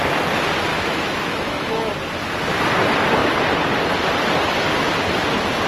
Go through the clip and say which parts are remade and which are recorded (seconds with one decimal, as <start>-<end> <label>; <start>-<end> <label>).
0.0-0.7 recorded; 0.7-1.9 remade; 1.9-5.7 recorded